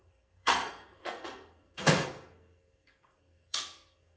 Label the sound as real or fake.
fake